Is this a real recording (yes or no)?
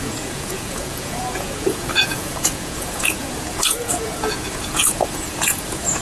no